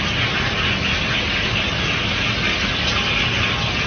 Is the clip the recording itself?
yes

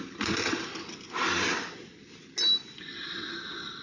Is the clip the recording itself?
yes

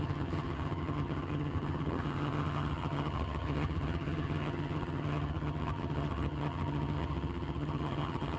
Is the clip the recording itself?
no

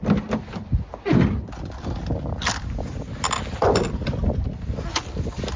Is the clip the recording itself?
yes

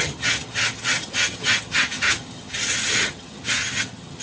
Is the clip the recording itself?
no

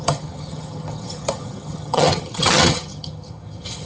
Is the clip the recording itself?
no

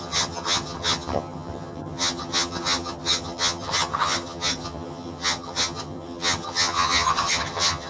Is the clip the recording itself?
no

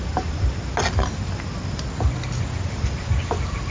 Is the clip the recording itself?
yes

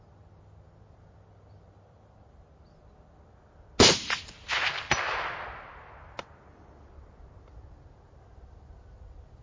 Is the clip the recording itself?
yes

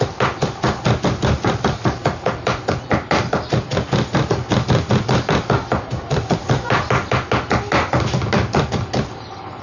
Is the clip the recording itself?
yes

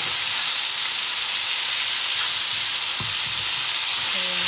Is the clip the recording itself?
yes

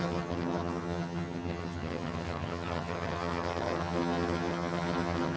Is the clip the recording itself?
no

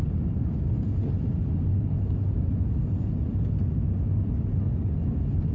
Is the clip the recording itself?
yes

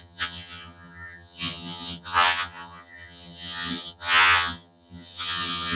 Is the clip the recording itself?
no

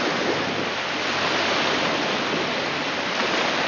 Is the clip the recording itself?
yes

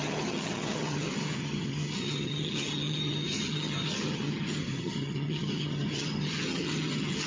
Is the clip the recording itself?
no